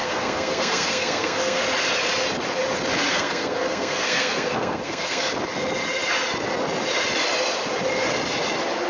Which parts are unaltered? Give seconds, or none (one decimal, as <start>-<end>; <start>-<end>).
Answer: 1.6-3.1; 5.3-8.9